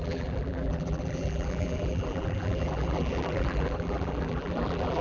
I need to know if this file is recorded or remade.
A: remade